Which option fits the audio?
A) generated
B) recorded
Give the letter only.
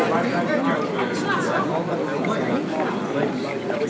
B